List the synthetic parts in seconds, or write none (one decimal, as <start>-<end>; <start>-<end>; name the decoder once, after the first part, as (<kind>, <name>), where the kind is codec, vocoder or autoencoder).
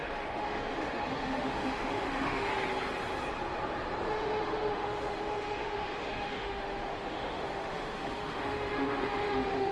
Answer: 0.0-2.5 (autoencoder, DAC-VAE); 4.1-9.7